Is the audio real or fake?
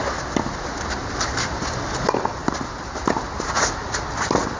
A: real